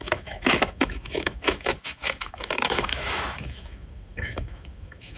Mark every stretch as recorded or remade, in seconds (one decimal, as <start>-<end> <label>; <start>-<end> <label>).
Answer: 0.0-5.2 remade